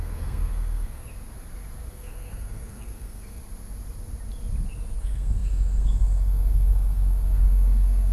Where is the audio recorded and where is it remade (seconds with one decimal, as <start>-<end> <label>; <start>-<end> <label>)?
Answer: 0.0-1.1 remade; 1.1-1.9 recorded; 1.9-3.4 remade; 3.4-5.0 recorded; 5.0-8.1 remade